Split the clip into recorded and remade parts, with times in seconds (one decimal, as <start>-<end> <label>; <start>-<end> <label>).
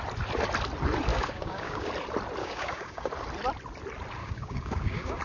0.0-1.1 recorded; 1.1-1.9 remade; 1.9-2.4 recorded; 2.4-3.1 remade; 3.1-4.2 recorded; 4.2-5.2 remade